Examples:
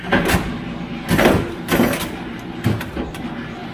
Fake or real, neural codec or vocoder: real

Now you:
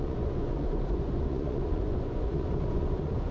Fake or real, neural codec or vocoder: fake, vocoder, Vocos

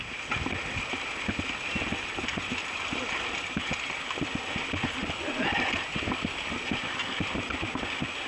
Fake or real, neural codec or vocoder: real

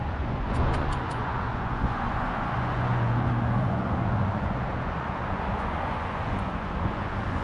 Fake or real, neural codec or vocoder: fake, vocoder, Vocos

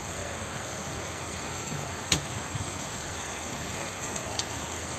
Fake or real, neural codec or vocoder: fake, codec, SNAC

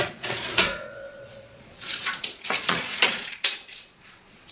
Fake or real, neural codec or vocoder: fake, vocoder, Vocos